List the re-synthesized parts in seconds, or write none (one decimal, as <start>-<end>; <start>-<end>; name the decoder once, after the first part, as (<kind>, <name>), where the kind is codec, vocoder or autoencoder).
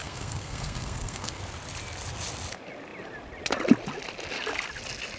0.0-1.4 (codec, SNAC)